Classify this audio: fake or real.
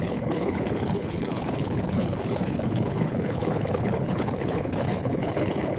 fake